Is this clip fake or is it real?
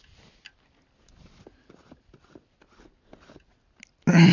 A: real